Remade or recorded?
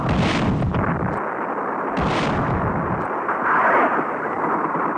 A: recorded